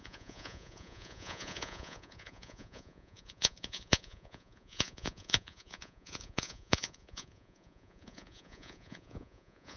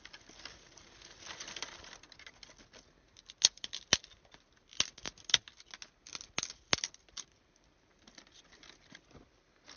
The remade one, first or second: first